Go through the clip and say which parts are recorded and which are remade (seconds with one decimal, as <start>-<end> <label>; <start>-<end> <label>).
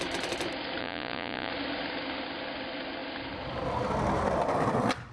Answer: 0.0-0.8 recorded; 0.8-1.5 remade; 1.5-5.1 recorded